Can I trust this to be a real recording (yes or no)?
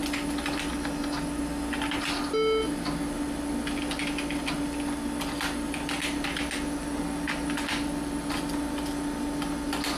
yes